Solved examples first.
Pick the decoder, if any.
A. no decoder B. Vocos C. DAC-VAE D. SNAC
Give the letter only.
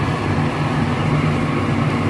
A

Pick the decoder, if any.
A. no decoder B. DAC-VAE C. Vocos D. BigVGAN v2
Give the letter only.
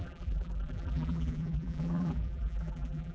D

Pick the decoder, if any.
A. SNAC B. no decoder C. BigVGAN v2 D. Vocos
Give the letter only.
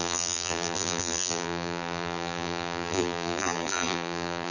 C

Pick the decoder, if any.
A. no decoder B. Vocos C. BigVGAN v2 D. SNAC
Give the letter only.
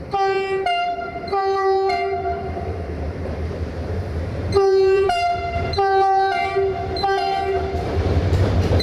C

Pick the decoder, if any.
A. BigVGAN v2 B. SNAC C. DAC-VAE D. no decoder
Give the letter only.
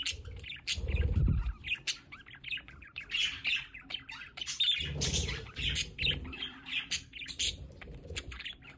A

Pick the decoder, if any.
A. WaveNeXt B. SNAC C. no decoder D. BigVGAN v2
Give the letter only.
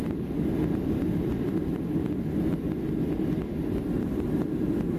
D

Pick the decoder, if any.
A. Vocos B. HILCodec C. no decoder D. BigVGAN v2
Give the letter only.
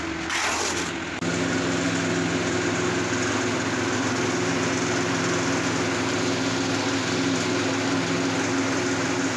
C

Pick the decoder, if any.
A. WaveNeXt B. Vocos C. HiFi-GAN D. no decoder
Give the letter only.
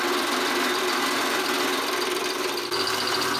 D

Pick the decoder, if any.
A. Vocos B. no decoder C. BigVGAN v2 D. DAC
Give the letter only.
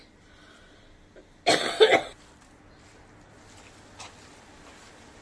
B